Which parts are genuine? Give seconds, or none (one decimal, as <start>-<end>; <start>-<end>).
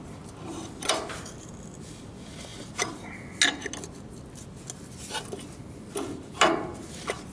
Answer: 0.0-7.3